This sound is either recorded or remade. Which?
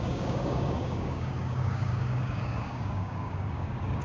remade